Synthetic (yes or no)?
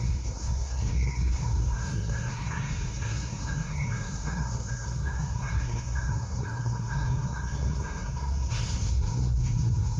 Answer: yes